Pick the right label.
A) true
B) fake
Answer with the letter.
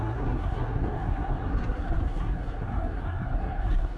B